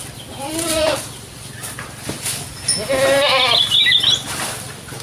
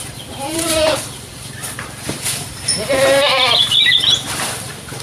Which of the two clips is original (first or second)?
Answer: first